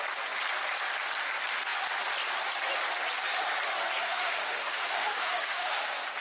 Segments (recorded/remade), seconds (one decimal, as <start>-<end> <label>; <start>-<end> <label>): 0.0-4.0 recorded; 4.0-5.8 remade; 5.8-6.2 recorded